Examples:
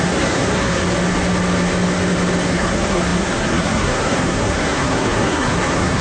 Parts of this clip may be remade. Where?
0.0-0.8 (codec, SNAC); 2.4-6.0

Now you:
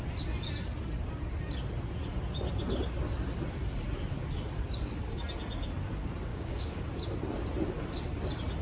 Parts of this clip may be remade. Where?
6.3-6.8 (codec, DAC)

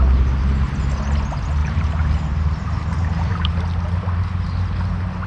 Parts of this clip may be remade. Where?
1.6-3.6 (vocoder, BigVGAN v2)

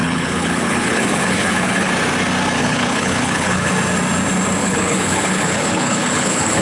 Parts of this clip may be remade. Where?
0.0-1.9 (codec, HILCodec); 2.6-3.7; 4.6-6.6

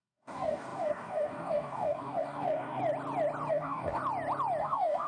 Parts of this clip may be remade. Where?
0.0-2.8 (codec, DAC); 3.5-4.0; 4.6-5.1

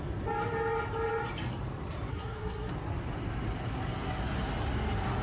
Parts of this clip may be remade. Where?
2.1-2.7 (codec, SNAC)

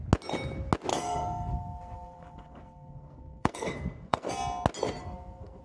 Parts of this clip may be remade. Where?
0.9-4.3 (codec, SNAC); 5.0-5.6